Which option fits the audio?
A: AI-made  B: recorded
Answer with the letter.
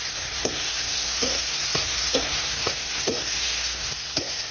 A